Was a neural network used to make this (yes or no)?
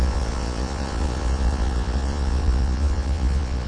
yes